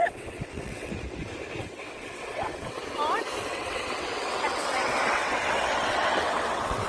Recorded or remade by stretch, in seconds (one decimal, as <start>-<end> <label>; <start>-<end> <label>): 0.0-0.9 remade; 0.9-1.6 recorded; 1.6-2.8 remade; 2.8-3.5 recorded; 3.5-6.9 remade